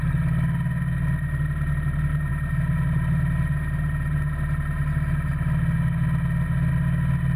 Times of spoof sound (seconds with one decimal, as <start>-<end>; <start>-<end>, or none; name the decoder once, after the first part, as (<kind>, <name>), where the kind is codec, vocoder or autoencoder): none